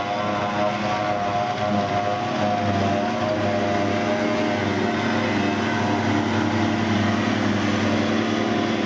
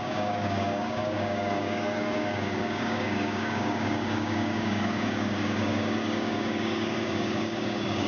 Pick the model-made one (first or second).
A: second